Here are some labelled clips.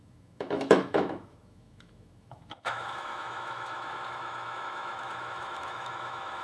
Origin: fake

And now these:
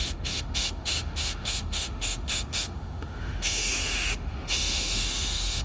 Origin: fake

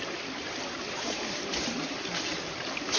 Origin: real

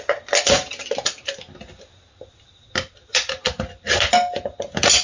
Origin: real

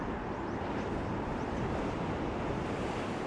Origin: real